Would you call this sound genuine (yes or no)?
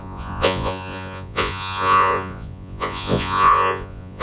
no